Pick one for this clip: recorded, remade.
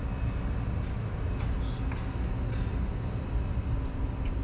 recorded